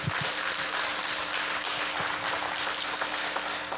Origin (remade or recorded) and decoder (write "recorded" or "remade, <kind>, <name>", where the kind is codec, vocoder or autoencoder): recorded